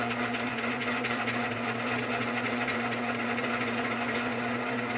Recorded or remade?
remade